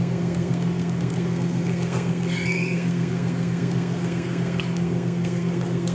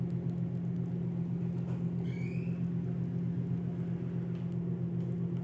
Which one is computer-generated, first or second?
first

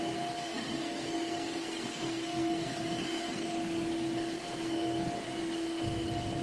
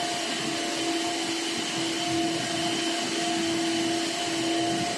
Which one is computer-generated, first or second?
first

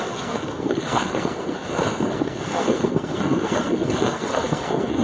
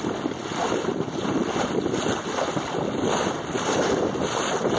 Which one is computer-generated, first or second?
first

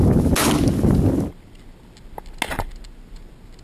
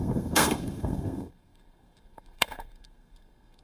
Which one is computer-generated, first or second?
second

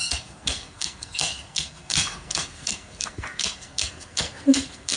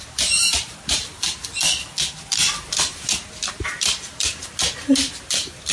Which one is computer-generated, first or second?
first